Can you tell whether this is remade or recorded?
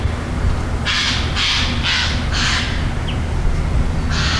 recorded